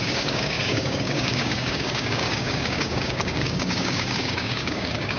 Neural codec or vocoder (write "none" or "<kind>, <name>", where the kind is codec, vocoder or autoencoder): codec, DAC